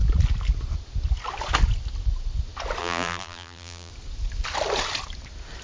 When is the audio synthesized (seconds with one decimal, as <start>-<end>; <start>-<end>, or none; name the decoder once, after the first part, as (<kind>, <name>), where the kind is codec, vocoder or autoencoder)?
2.8-3.9 (vocoder, BigVGAN v2)